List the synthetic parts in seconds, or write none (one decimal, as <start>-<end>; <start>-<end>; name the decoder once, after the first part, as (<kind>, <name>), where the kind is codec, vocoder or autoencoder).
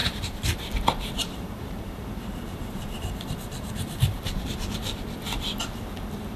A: 0.0-0.7 (vocoder, BigVGAN v2); 1.2-5.0